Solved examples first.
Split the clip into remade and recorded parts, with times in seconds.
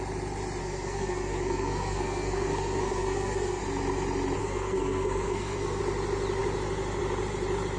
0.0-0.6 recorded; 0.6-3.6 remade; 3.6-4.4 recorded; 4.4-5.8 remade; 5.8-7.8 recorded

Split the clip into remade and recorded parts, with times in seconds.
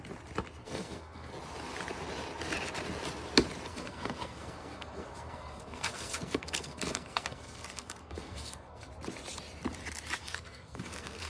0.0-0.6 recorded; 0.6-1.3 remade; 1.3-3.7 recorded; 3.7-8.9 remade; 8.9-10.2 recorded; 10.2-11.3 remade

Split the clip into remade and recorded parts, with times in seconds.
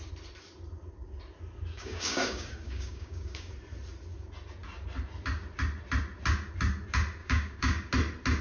0.0-1.7 recorded; 1.7-3.5 remade; 3.5-7.2 recorded; 7.2-7.9 remade; 7.9-8.4 recorded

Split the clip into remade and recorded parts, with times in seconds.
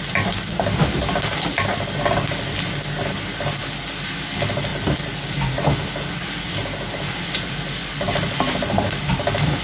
0.0-9.6 recorded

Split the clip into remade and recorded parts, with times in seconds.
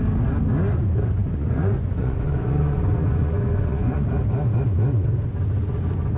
0.0-1.2 recorded; 1.2-4.1 remade; 4.1-6.2 recorded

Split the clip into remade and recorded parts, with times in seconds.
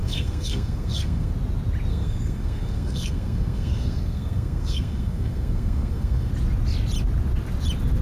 0.0-1.3 remade; 1.3-1.9 recorded; 1.9-6.3 remade; 6.3-8.0 recorded